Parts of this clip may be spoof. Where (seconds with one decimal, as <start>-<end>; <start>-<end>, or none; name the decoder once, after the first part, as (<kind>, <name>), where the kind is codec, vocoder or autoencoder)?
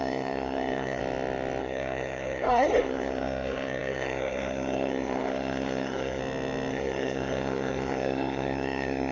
0.0-1.0 (codec, SNAC); 1.6-6.2; 6.7-9.1